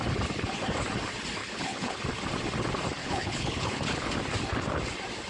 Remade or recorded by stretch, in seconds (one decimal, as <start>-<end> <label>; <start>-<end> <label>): 0.0-1.4 recorded; 1.4-2.0 remade; 2.0-3.0 recorded; 3.0-4.1 remade; 4.1-5.3 recorded